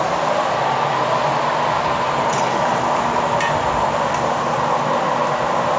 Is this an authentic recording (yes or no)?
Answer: yes